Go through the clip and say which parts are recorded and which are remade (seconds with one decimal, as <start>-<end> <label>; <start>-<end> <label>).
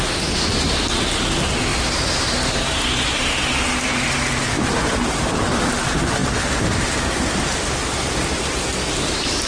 0.0-1.7 recorded; 1.7-5.2 remade; 5.2-9.5 recorded